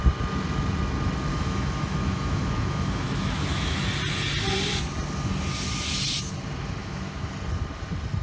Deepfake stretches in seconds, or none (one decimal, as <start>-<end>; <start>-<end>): 1.3-3.8; 6.8-7.3

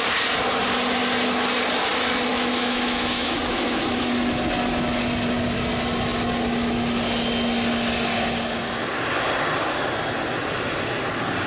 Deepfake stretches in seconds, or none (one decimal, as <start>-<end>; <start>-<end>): 2.3-3.8

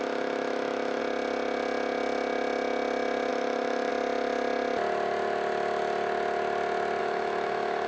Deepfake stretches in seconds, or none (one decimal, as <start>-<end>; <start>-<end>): 0.0-1.0; 3.3-3.9; 7.0-7.9

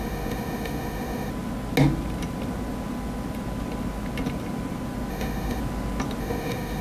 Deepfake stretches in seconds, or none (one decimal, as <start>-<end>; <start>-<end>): 0.0-1.3; 5.1-5.6; 6.2-6.8